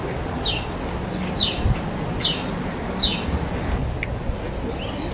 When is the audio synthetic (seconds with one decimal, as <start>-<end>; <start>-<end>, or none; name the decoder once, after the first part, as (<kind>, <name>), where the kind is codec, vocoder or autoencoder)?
none